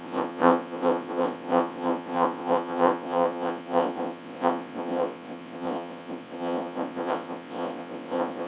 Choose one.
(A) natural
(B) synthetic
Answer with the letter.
B